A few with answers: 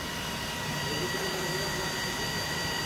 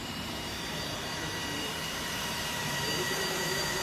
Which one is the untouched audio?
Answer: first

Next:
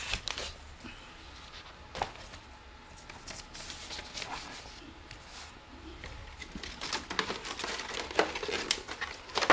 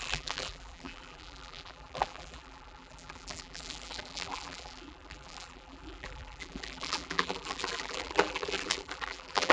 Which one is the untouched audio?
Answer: first